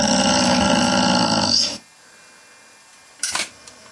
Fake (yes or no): no